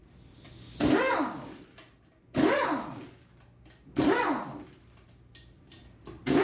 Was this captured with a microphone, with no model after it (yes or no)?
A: yes